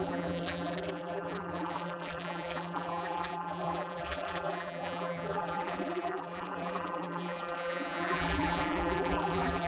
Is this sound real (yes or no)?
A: no